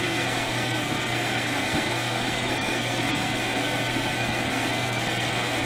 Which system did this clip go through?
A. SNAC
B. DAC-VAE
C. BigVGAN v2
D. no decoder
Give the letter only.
A